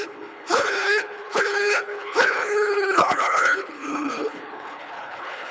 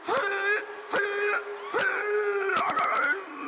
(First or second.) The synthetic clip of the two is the first